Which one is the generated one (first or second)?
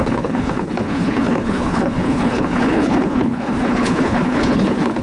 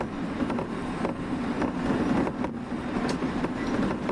first